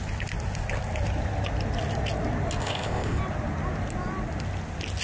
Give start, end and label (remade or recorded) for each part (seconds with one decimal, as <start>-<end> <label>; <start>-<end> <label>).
0.0-2.6 recorded; 2.6-3.2 remade; 3.2-5.0 recorded